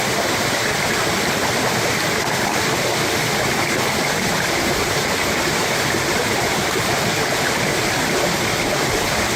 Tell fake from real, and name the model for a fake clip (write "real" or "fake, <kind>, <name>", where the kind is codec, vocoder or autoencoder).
fake, vocoder, BigVGAN v2